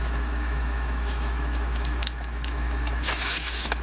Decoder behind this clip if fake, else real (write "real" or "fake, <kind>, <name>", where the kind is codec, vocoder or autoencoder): fake, autoencoder, DAC-VAE